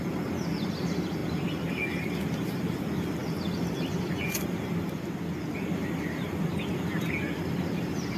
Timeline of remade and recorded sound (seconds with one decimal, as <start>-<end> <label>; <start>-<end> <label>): 0.0-8.2 recorded